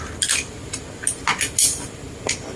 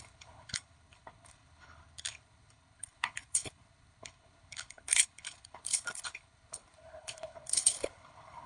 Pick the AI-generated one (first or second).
second